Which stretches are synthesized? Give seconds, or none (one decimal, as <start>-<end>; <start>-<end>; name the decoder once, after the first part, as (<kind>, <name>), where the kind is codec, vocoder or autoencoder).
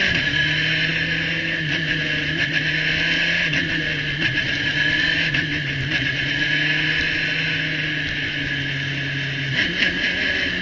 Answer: none